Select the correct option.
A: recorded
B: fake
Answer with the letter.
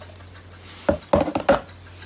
A